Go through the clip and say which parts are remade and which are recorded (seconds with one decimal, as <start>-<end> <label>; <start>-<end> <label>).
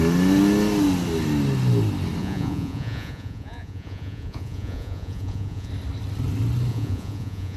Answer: 0.0-2.2 recorded; 2.2-5.7 remade; 5.7-6.7 recorded; 6.7-7.6 remade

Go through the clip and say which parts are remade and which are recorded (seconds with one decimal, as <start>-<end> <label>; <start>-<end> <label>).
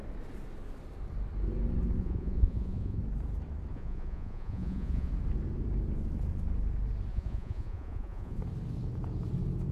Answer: 0.0-2.0 recorded; 2.0-3.0 remade; 3.0-3.7 recorded; 3.7-5.1 remade; 5.1-7.1 recorded; 7.1-8.4 remade; 8.4-9.7 recorded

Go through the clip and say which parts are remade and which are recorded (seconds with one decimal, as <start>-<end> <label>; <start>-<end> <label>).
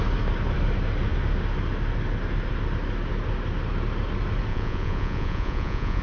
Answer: 0.0-4.5 recorded; 4.5-6.0 remade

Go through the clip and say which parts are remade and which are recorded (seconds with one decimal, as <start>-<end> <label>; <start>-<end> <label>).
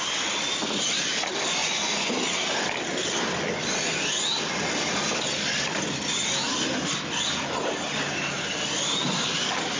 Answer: 0.0-1.6 recorded; 1.6-2.1 remade; 2.1-9.8 recorded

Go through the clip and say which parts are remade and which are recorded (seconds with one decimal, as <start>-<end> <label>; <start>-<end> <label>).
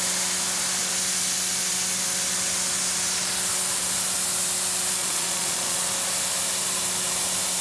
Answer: 0.0-5.0 recorded; 5.0-5.9 remade; 5.9-7.6 recorded